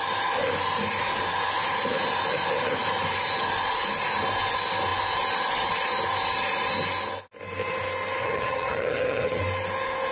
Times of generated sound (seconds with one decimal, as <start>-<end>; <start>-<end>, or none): 8.2-9.4